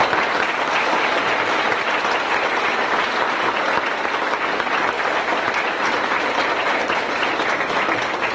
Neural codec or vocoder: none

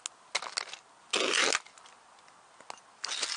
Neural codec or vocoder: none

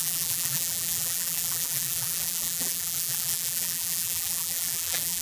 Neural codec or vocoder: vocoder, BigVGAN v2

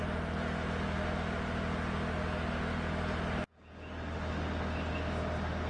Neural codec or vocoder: none